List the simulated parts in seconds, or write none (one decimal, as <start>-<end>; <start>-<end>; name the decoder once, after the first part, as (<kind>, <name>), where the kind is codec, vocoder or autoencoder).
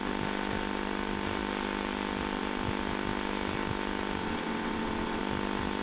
4.2-5.2 (vocoder, WaveNeXt)